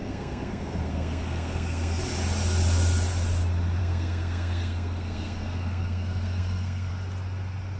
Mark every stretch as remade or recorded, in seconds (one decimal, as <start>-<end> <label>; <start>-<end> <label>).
0.0-2.0 remade; 2.0-3.8 recorded; 3.8-6.9 remade; 6.9-7.8 recorded